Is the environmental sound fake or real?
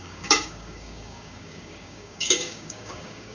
fake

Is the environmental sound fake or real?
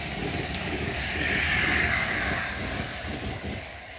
fake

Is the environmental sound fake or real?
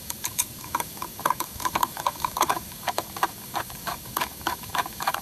fake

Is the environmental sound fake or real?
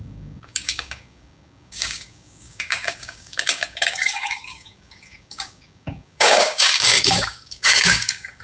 fake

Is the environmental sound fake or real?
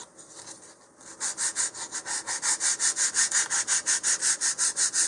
real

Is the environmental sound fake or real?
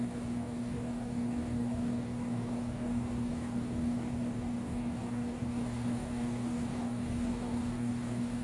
fake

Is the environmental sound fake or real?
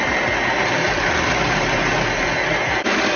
real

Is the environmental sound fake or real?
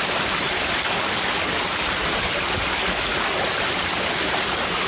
real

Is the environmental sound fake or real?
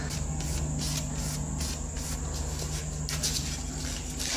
real